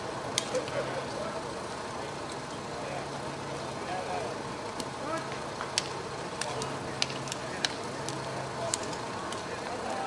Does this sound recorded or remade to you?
recorded